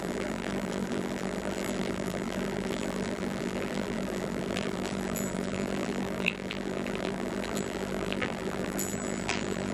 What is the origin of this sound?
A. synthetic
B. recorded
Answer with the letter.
A